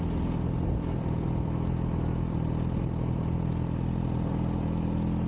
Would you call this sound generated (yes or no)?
no